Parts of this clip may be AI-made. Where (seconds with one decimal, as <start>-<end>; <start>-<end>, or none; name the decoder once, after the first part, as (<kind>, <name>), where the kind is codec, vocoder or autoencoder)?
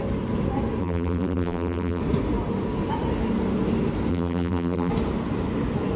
0.8-2.0 (vocoder, BigVGAN v2); 4.1-4.9